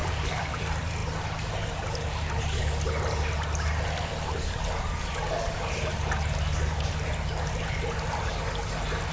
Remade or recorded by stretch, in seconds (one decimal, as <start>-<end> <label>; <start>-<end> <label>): 0.0-0.6 remade; 0.6-9.1 recorded